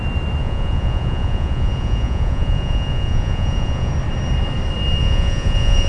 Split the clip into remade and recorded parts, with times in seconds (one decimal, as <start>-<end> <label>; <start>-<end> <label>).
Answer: 0.0-0.4 recorded; 0.4-3.9 remade; 3.9-5.0 recorded; 5.0-5.9 remade